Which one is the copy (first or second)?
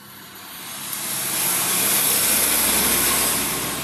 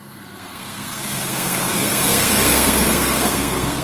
second